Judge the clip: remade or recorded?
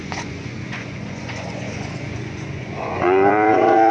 remade